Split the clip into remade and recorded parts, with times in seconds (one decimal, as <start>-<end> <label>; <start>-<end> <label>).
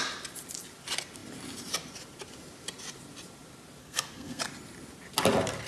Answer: 0.0-3.8 recorded; 3.8-4.4 remade; 4.4-5.7 recorded